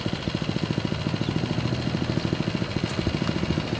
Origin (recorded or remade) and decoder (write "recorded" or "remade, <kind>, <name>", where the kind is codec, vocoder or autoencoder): recorded